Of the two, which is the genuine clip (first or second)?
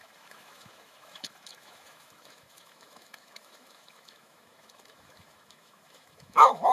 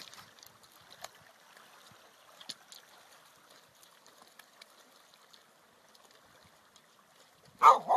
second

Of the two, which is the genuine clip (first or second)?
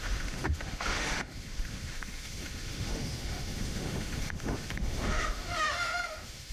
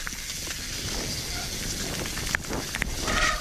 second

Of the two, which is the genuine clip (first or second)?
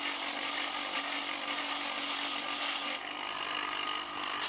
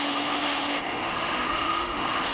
first